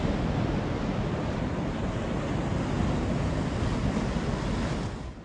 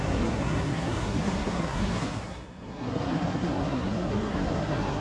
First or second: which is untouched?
first